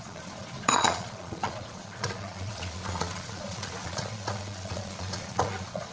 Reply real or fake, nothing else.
fake